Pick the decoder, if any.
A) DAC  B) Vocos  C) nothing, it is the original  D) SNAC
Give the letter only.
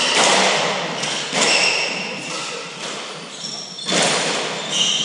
C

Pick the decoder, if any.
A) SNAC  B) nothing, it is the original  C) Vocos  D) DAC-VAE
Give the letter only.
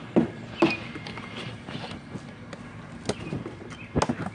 B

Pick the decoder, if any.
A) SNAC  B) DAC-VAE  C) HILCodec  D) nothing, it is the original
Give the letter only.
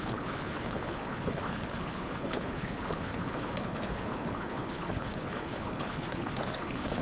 C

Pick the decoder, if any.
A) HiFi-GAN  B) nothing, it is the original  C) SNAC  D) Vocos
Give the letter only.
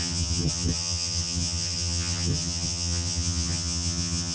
A